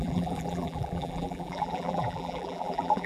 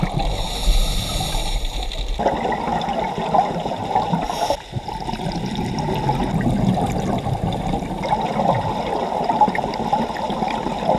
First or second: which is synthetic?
first